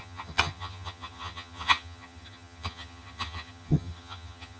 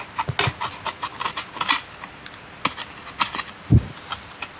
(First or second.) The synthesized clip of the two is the first